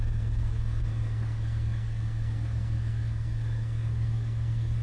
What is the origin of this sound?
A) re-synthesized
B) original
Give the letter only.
A